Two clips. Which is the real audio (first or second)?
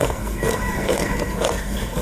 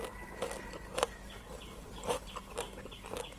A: second